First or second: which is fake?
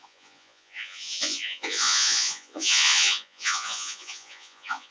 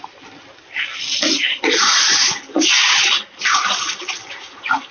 first